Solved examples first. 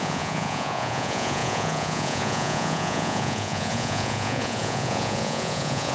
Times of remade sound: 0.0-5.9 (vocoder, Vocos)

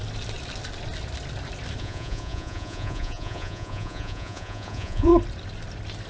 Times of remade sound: 1.8-5.1 (vocoder, Vocos)

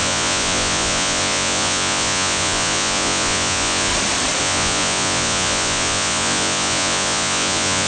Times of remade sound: 0.0-3.9 (vocoder, Vocos); 4.4-7.9

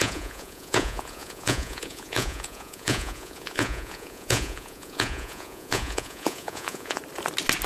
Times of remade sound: 0.0-7.0 (vocoder, Vocos)

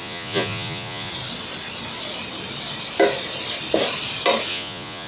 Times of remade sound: 0.0-1.1 (vocoder, Vocos); 4.5-5.1

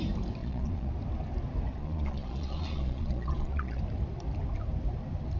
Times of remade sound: 0.4-0.9 (vocoder, Vocos); 1.7-3.8

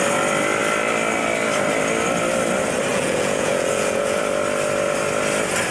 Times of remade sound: 2.9-4.2 (vocoder, Vocos)